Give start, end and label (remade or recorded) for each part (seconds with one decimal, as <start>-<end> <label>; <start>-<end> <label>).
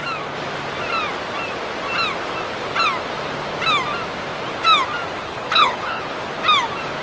0.0-5.2 recorded; 5.2-6.0 remade; 6.0-7.0 recorded